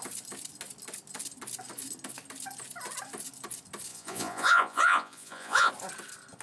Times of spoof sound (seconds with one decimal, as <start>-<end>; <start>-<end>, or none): 3.9-5.7